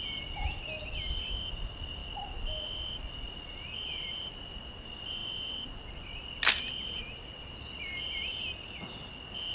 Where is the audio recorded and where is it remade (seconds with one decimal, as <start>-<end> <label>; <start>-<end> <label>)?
0.0-9.5 recorded